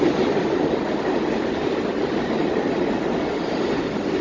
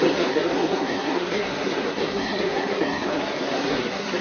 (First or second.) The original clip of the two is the first